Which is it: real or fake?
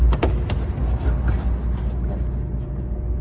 real